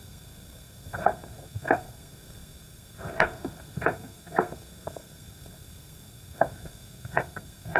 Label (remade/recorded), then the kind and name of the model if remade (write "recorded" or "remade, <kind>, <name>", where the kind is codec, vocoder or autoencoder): remade, codec, SNAC